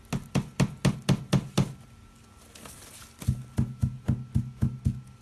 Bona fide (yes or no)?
yes